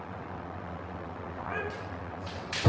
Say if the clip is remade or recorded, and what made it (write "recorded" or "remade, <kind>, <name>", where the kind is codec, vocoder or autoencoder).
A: remade, vocoder, WaveNeXt